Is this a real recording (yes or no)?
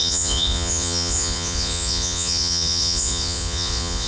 no